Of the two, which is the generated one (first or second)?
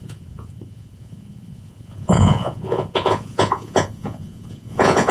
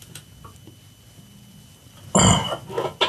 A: first